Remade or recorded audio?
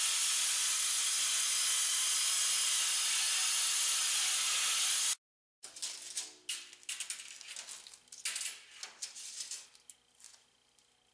recorded